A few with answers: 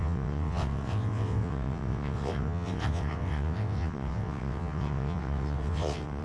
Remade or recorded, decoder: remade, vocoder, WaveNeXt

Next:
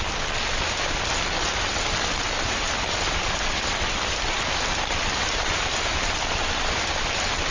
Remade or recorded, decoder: recorded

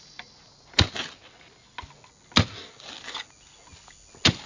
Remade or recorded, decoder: recorded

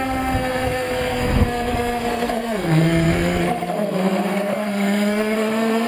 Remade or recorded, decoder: remade, codec, SNAC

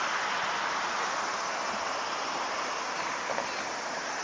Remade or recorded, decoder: recorded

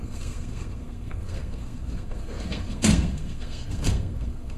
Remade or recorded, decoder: remade, codec, SNAC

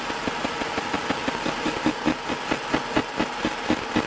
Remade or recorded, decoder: recorded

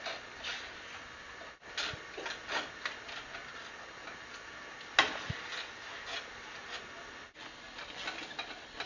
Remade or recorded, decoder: recorded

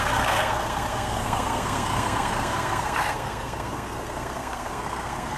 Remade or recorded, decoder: remade, codec, SNAC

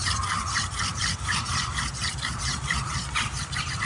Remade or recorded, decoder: remade, vocoder, BigVGAN v2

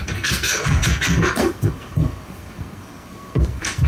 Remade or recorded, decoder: remade, codec, SNAC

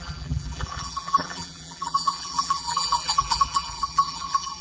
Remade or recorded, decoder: remade, vocoder, BigVGAN v2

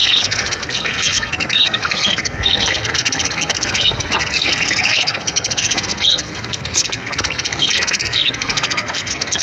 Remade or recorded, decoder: remade, codec, SNAC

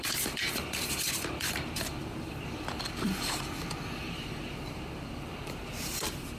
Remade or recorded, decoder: remade, vocoder, BigVGAN v2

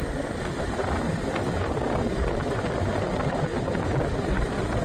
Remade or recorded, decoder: recorded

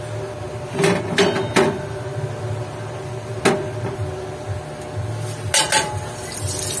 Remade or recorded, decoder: recorded